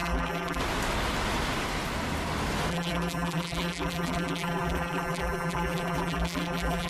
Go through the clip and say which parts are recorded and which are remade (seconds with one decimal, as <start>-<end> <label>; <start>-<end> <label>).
0.0-0.6 remade; 0.6-2.7 recorded; 2.7-6.9 remade